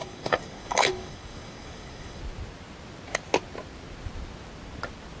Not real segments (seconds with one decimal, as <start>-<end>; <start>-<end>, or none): 0.0-2.2

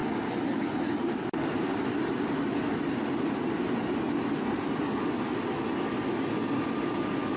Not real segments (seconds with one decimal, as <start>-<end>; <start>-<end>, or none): 0.0-2.0

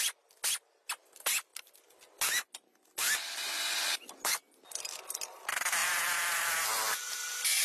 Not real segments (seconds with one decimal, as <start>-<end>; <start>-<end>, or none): none

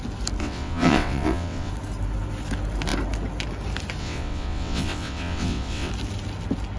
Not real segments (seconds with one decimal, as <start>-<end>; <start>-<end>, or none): 0.4-1.7; 4.0-5.9

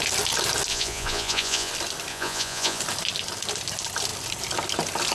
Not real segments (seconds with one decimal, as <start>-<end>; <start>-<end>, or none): 0.7-1.7; 2.1-2.8

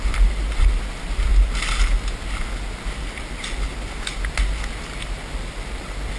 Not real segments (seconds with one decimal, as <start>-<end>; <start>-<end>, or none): none

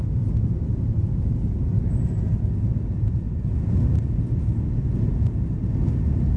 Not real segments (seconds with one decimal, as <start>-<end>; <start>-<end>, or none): 0.0-1.1

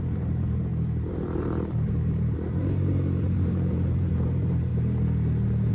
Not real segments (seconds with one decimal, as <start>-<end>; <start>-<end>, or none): 0.0-4.7